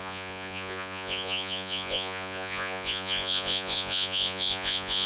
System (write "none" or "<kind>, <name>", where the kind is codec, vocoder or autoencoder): vocoder, Vocos